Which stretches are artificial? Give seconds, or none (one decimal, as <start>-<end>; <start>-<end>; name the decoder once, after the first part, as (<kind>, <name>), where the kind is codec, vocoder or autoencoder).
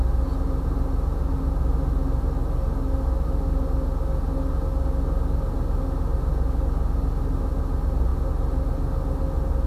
none